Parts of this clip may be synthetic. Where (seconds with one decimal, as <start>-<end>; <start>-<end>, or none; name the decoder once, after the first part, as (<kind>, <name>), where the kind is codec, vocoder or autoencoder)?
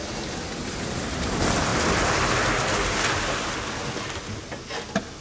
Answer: none